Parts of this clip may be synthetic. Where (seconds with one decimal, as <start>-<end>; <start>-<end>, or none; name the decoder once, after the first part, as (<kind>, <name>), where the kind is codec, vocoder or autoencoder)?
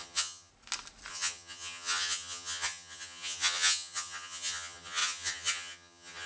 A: 0.0-0.5 (vocoder, HiFi-GAN); 1.1-6.3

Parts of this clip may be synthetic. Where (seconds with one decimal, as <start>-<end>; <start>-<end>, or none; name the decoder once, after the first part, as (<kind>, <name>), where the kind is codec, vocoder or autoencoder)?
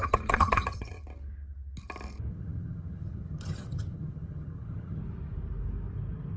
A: 0.0-1.0 (vocoder, HiFi-GAN); 2.3-5.0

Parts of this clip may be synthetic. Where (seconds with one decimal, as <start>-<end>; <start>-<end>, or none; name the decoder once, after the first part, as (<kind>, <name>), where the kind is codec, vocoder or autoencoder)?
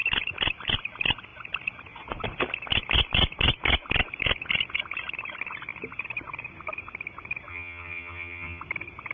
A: 7.5-8.6 (vocoder, HiFi-GAN)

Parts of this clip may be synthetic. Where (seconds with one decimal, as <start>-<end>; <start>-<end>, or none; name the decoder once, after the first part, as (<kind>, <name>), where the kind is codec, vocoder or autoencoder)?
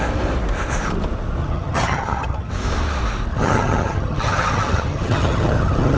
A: 1.4-2.5 (vocoder, HiFi-GAN); 3.3-6.0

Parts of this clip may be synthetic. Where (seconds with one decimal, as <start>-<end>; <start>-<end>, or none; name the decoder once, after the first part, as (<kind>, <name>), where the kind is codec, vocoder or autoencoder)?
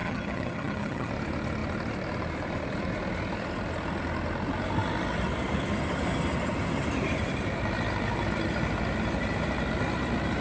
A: 0.0-1.1 (vocoder, HiFi-GAN)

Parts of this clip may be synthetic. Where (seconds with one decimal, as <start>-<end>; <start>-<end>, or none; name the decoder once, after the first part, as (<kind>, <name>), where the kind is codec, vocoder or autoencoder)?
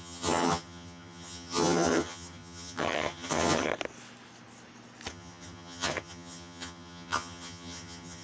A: 0.0-3.7 (vocoder, HiFi-GAN); 5.1-8.2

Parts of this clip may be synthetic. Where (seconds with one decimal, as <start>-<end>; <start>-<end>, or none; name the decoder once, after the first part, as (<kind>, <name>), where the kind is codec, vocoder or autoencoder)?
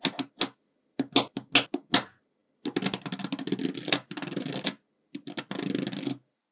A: none